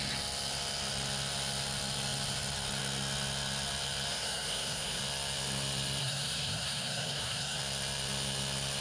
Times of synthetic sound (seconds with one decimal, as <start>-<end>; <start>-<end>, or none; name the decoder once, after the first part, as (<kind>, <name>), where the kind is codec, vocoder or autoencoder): 4.1-5.0 (codec, SNAC); 6.0-7.6